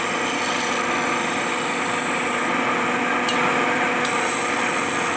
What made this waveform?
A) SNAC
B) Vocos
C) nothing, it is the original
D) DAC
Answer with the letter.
C